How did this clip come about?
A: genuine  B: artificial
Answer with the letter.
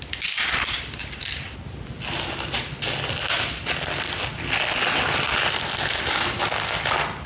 A